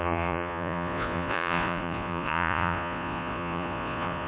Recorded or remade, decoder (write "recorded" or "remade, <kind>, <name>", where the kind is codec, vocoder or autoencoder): remade, vocoder, Vocos